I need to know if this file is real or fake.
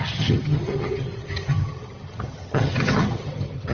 fake